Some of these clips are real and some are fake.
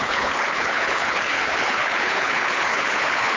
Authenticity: fake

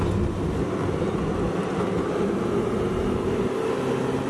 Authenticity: real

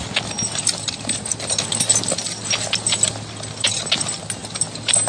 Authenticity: real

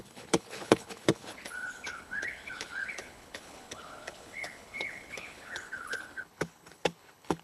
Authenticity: fake